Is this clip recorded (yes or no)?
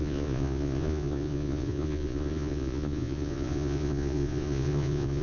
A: no